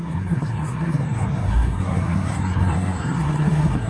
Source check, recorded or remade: remade